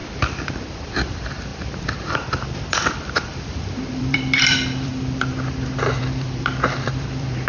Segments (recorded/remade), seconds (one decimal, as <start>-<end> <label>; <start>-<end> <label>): 0.0-4.9 remade; 4.9-5.9 recorded; 5.9-7.5 remade